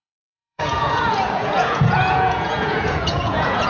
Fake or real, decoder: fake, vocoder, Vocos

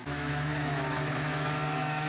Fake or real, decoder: fake, autoencoder, DAC-VAE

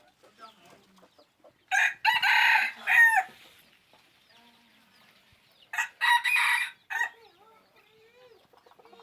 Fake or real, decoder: real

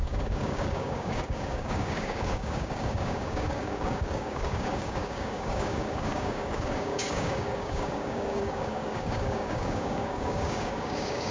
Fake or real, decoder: fake, codec, DAC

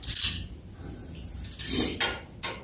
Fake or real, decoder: real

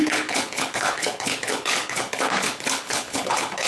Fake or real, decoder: fake, codec, HILCodec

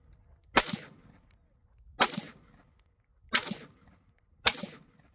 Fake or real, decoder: real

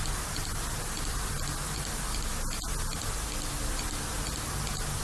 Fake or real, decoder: real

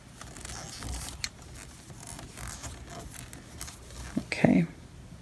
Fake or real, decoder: real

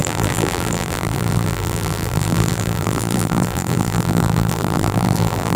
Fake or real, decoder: fake, vocoder, BigVGAN v2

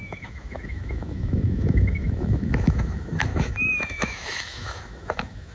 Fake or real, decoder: fake, autoencoder, DAC-VAE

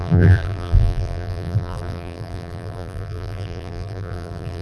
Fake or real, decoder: fake, vocoder, BigVGAN v2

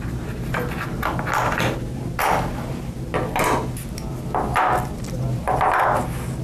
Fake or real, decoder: real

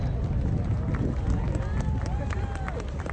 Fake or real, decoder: real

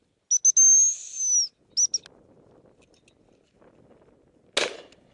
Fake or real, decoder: real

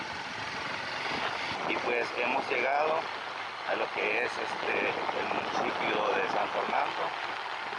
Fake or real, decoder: real